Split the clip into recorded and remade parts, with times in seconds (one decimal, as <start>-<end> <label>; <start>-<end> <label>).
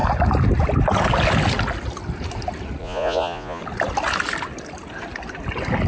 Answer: 0.0-2.8 recorded; 2.8-3.6 remade; 3.6-5.9 recorded